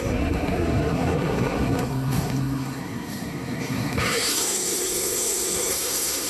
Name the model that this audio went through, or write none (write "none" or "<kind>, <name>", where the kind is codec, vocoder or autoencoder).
codec, SNAC